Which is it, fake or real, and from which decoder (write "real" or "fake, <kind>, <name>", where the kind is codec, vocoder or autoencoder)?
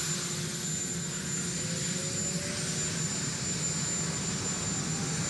real